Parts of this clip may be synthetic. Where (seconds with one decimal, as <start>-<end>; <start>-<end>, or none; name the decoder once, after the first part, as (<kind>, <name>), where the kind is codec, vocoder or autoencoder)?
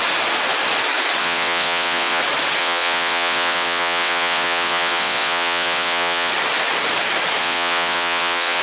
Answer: 1.2-2.2 (vocoder, WaveNeXt); 2.6-6.3; 7.4-8.6